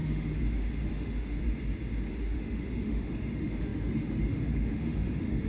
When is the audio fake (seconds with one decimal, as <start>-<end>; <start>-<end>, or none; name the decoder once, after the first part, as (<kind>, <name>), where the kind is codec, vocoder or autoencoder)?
0.0-1.4 (autoencoder, DAC-VAE); 2.1-5.5